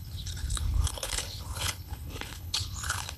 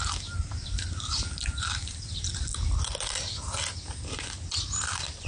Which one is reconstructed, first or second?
first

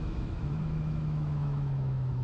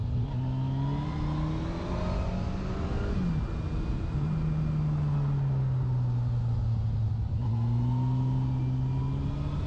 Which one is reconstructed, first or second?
first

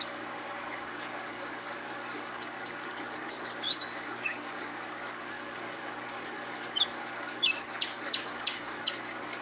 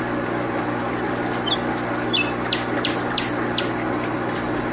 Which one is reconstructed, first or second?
first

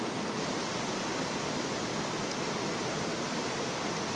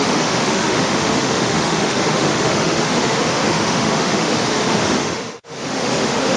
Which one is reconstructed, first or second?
second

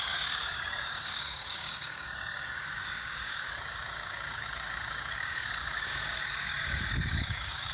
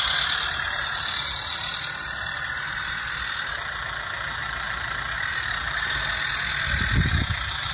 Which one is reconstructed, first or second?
first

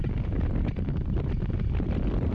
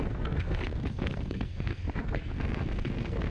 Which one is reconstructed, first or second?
second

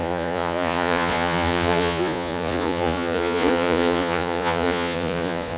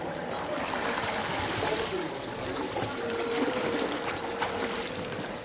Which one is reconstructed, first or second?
first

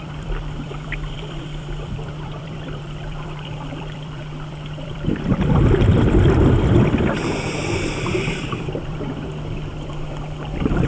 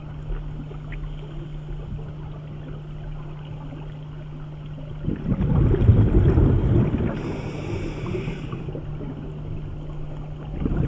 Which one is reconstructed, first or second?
first